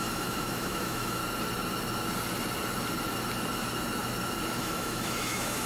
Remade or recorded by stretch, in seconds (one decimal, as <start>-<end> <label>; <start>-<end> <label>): 0.0-1.2 remade; 1.2-4.6 recorded; 4.6-5.7 remade